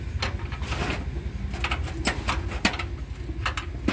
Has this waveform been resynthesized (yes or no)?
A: no